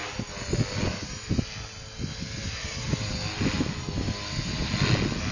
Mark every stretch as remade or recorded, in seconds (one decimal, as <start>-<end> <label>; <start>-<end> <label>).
0.0-5.3 recorded